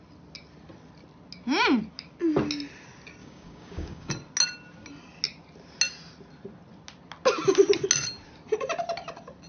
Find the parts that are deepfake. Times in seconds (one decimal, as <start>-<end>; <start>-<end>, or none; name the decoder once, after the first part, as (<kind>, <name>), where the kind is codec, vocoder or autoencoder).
3.2-4.1 (codec, DAC)